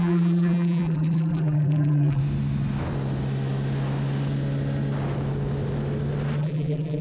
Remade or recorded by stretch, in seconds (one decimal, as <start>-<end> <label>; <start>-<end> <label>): 0.0-2.2 remade; 2.2-6.4 recorded; 6.4-7.0 remade